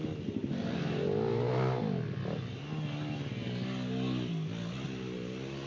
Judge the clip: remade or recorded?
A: recorded